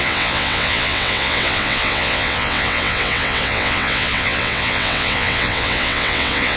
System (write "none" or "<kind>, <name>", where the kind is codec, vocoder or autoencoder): vocoder, WaveNeXt